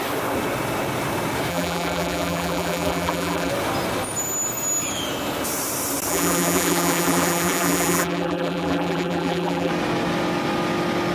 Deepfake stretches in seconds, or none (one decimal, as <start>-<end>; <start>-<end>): 1.5-3.5; 6.1-9.7